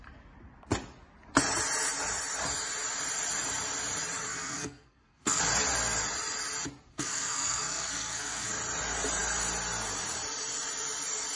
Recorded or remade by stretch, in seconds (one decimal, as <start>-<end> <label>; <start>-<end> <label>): 0.0-4.3 recorded; 4.3-5.4 remade; 5.4-6.9 recorded; 6.9-8.5 remade; 8.5-11.4 recorded